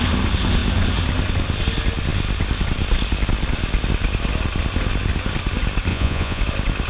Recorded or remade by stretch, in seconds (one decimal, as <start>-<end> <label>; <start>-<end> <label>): 0.0-5.9 recorded; 5.9-6.4 remade; 6.4-6.9 recorded